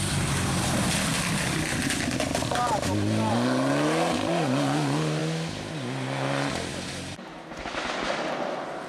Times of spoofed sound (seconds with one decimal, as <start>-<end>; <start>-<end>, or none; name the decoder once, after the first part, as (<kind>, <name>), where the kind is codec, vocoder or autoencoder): none